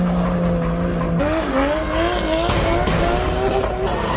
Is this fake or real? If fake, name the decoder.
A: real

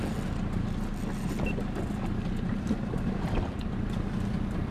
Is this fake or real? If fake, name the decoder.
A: real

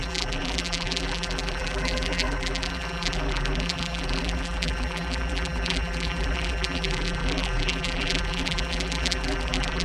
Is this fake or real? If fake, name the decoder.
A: fake, vocoder, BigVGAN v2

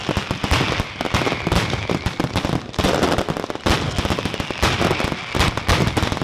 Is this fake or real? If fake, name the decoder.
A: real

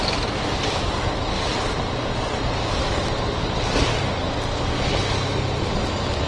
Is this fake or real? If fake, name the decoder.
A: real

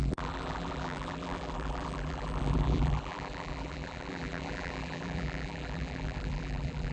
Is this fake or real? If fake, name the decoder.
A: fake, vocoder, BigVGAN v2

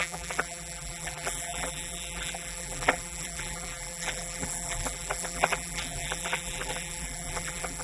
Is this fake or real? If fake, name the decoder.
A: fake, vocoder, BigVGAN v2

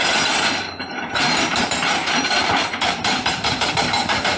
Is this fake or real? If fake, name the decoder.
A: fake, vocoder, BigVGAN v2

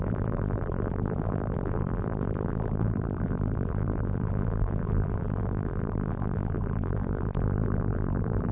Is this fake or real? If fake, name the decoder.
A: fake, vocoder, BigVGAN v2